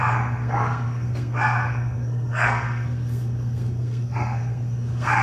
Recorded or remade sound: remade